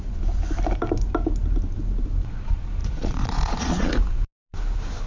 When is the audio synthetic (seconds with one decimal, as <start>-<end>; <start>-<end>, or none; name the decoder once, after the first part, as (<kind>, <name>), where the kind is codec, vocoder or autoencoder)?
2.8-3.9 (vocoder, Vocos)